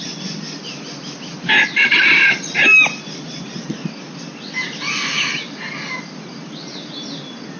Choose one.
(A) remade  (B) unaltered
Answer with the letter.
B